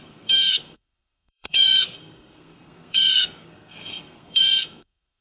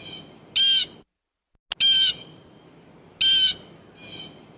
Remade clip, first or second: first